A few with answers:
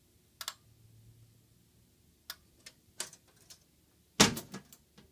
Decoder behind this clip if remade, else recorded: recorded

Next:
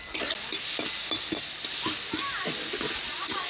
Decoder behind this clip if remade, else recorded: recorded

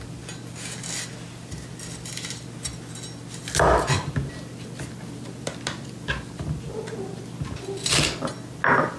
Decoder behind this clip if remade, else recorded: recorded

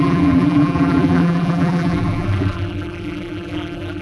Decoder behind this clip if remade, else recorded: remade, vocoder, BigVGAN v2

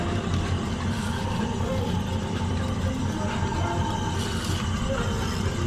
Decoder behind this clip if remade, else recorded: recorded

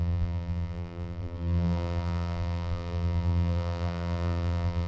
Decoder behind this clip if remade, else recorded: remade, vocoder, BigVGAN v2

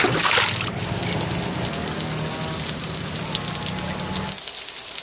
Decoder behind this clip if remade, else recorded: recorded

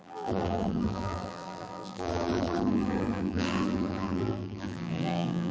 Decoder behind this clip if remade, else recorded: remade, vocoder, BigVGAN v2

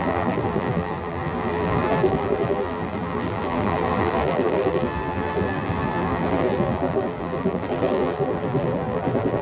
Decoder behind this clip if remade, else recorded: remade, vocoder, BigVGAN v2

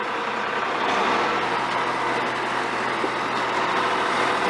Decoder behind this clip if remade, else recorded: recorded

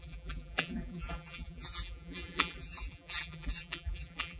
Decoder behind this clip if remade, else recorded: remade, vocoder, BigVGAN v2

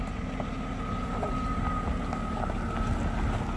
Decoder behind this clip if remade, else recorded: recorded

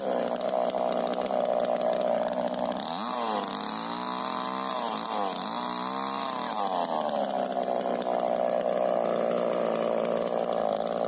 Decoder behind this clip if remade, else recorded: recorded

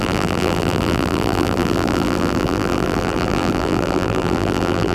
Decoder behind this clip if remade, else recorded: remade, vocoder, BigVGAN v2